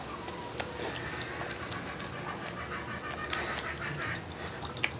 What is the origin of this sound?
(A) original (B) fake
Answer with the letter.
A